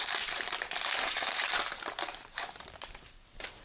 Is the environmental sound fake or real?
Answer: fake